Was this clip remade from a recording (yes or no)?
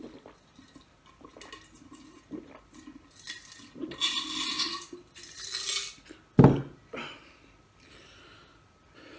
no